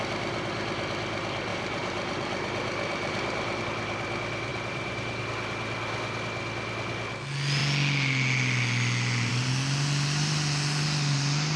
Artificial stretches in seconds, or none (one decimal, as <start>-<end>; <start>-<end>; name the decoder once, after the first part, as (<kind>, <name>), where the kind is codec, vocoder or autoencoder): 1.5-3.6 (vocoder, BigVGAN v2); 4.5-5.2

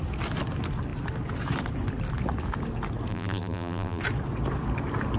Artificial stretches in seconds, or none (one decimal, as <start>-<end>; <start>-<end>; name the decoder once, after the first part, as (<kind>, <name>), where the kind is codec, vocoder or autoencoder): 3.1-4.0 (vocoder, BigVGAN v2)